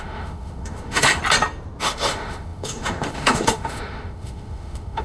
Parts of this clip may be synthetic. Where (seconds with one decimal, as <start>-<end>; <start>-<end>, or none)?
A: 0.0-1.2; 1.8-5.0